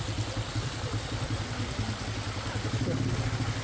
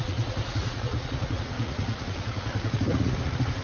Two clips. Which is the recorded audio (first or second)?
first